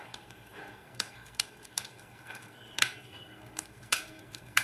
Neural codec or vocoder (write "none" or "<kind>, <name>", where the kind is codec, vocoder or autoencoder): codec, SNAC